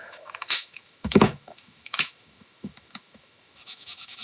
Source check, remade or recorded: remade